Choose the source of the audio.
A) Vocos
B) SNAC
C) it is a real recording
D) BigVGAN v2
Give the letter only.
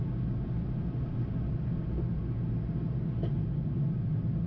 C